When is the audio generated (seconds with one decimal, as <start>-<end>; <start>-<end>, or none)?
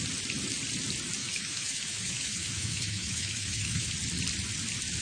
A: 1.2-3.9